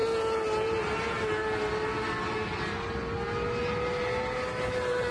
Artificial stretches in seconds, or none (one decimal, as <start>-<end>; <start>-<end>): none